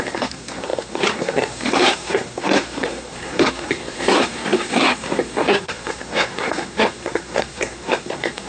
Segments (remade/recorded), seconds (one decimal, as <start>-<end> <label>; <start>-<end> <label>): 0.0-8.5 remade